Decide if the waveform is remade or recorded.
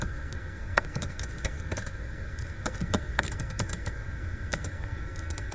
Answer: remade